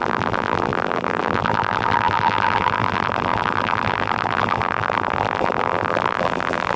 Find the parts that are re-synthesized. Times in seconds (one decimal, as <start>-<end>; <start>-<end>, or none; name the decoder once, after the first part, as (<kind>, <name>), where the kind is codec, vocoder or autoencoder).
0.0-6.8 (vocoder, BigVGAN v2)

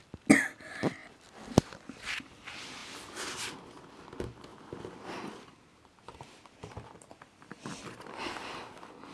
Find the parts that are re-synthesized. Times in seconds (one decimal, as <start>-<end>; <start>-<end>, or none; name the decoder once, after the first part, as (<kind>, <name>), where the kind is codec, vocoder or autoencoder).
4.5-8.2 (vocoder, BigVGAN v2)

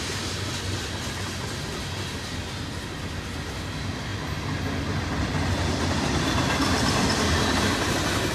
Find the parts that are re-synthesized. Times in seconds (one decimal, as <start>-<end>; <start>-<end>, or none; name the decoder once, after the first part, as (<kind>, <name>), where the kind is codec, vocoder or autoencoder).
none

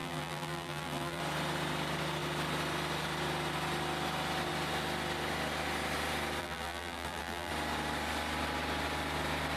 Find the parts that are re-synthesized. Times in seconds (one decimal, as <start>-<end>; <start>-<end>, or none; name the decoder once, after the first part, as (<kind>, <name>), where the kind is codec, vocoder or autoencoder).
0.0-1.2 (vocoder, BigVGAN v2); 6.4-7.5